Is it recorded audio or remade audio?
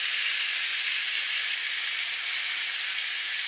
recorded